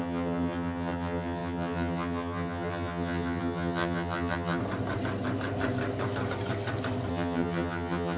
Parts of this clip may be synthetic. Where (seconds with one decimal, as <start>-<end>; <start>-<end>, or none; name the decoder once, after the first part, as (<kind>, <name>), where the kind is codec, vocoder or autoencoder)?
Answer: 0.0-4.6 (vocoder, HiFi-GAN); 7.1-8.2